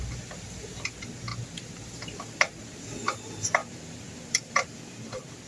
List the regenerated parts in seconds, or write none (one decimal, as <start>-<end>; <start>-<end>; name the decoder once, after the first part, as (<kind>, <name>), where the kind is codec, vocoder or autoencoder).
1.3-2.0 (vocoder, BigVGAN v2)